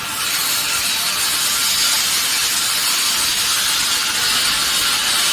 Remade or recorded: recorded